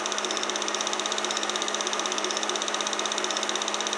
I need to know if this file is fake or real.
real